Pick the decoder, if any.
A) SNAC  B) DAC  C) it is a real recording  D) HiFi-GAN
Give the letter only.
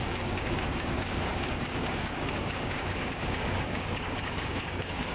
B